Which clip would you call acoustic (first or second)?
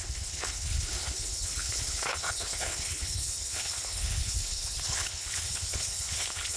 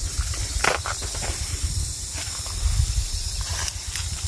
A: second